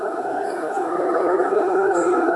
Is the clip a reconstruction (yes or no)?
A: yes